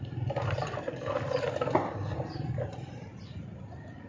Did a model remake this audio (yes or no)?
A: no